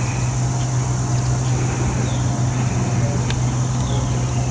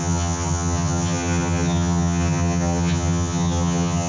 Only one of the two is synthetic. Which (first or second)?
second